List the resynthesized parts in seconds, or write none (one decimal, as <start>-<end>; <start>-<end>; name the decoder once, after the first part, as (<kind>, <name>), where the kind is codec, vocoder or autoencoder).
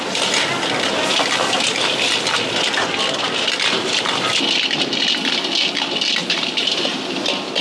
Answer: 6.2-7.6 (vocoder, BigVGAN v2)